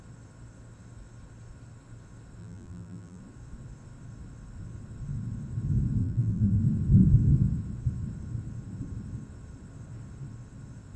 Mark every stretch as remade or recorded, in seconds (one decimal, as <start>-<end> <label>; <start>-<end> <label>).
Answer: 0.0-2.4 recorded; 2.4-3.2 remade; 3.2-6.0 recorded; 6.0-6.6 remade; 6.6-11.0 recorded